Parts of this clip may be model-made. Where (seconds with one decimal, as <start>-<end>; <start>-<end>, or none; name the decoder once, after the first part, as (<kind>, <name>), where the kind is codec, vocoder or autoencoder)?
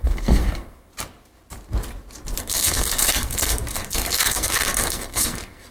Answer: 0.0-0.9 (codec, SNAC); 2.4-5.7